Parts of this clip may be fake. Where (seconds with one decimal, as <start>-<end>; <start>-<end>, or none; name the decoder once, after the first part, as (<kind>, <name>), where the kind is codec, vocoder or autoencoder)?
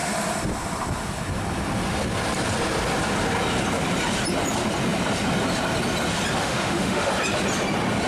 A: 6.4-7.1 (autoencoder, DAC-VAE)